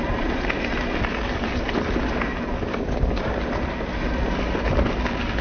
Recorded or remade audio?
recorded